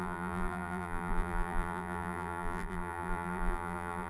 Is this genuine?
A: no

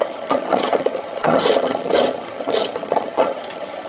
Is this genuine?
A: no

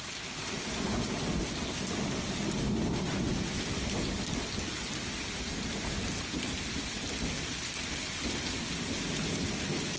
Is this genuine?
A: yes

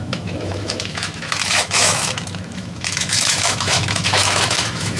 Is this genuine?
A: no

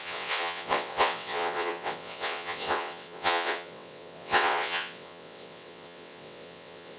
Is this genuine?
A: no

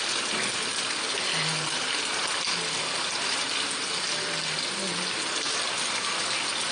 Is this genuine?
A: yes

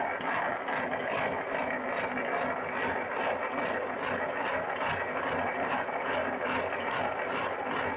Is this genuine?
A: yes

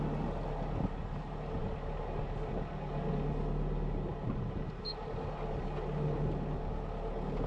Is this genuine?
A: yes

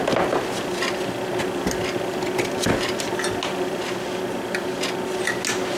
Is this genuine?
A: yes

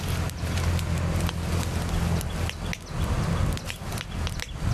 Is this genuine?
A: yes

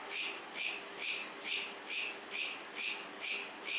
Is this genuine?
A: yes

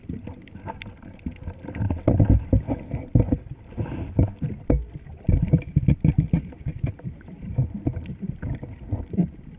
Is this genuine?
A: yes